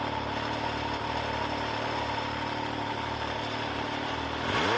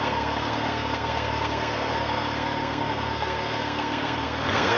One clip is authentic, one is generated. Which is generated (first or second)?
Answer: second